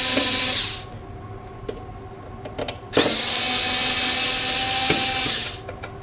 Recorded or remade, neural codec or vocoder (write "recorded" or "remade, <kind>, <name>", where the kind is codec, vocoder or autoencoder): recorded